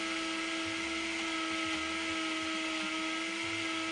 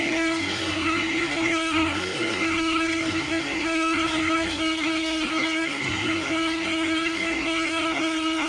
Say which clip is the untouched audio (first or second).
first